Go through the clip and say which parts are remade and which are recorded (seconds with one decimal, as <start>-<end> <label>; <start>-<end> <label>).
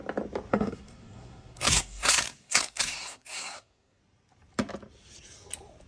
0.0-0.5 recorded; 0.5-4.0 remade; 4.0-5.9 recorded